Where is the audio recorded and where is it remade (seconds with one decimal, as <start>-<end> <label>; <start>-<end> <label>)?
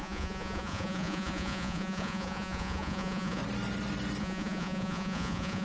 0.0-3.4 remade; 3.4-4.2 recorded; 4.2-5.6 remade